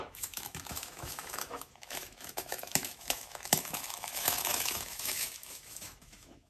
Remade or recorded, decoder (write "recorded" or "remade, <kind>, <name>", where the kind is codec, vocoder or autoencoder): remade, autoencoder, DAC-VAE